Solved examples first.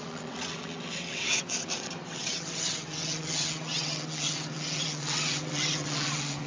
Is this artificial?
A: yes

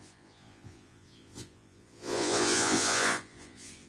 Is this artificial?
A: yes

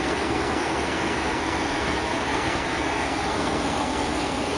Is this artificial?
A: yes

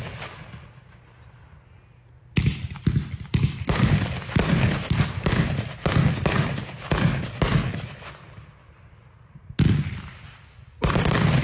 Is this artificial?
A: no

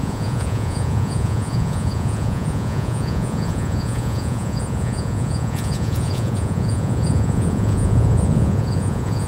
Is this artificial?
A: yes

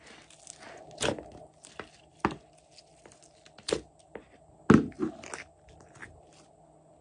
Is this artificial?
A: no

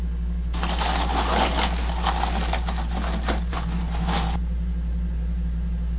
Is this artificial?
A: no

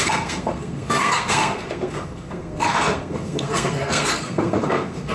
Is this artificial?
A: yes